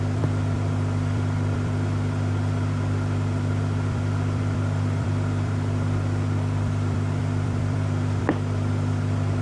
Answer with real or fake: fake